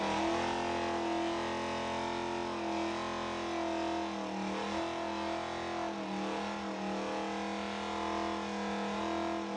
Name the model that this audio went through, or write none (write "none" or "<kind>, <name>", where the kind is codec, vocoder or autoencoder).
none